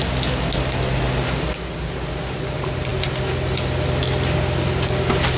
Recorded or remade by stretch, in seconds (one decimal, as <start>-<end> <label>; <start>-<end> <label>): 0.0-5.4 recorded